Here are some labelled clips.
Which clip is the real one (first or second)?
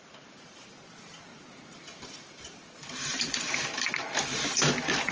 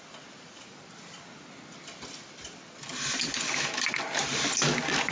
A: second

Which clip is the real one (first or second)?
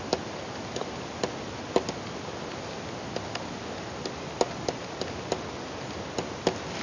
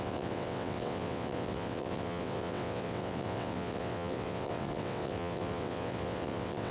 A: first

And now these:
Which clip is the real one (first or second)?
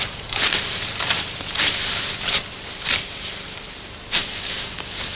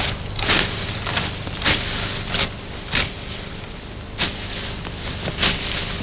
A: second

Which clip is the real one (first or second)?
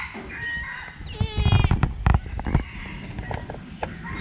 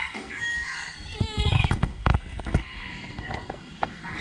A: first